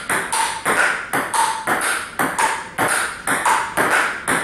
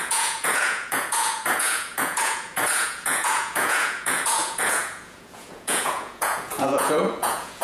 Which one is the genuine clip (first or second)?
first